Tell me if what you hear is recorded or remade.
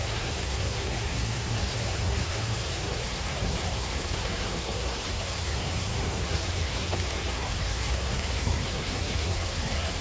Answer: remade